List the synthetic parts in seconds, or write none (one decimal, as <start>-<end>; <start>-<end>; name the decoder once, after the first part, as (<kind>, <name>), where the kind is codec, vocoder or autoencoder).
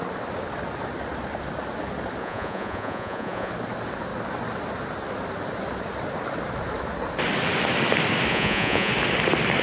2.2-3.5 (vocoder, Vocos); 8.3-8.9